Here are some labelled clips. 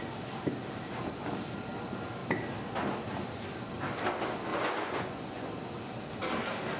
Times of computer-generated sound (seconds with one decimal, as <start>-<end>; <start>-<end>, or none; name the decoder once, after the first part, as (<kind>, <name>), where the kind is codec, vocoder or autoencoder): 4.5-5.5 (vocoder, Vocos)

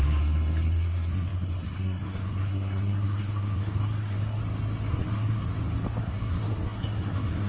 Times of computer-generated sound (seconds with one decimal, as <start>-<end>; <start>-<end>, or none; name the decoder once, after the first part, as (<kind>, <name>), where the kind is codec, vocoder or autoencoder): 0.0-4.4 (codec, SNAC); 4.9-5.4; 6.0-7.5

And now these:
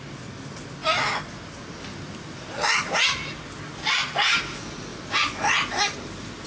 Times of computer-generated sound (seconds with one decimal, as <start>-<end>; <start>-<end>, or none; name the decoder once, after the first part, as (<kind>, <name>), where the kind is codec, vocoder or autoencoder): none